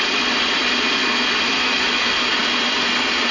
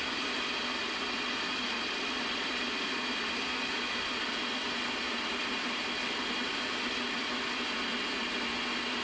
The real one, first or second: first